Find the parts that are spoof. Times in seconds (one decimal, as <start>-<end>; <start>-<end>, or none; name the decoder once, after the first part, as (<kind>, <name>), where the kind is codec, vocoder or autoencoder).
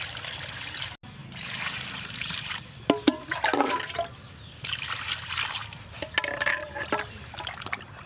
1.2-2.6 (vocoder, BigVGAN v2)